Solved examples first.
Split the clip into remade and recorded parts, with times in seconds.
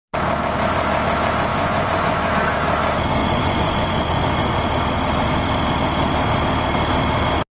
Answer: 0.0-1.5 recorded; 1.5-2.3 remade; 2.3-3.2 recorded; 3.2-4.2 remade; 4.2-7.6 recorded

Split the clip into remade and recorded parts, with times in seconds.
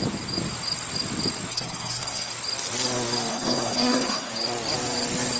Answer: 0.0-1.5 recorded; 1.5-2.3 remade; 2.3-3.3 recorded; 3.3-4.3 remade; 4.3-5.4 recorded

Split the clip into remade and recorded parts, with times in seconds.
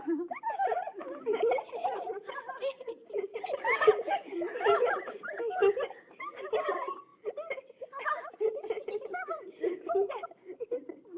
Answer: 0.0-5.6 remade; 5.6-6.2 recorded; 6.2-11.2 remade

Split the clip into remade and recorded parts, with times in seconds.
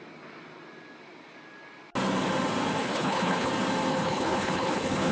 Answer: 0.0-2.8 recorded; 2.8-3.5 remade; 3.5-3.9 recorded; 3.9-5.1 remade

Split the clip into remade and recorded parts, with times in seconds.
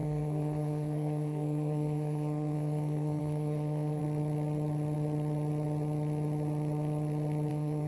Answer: 0.0-4.0 remade; 4.0-7.5 recorded; 7.5-7.9 remade